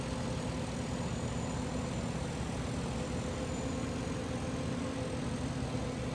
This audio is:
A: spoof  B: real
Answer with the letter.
B